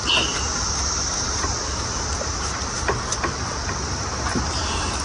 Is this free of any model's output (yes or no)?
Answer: yes